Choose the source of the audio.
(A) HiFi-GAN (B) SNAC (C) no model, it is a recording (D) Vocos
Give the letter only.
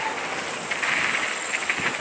C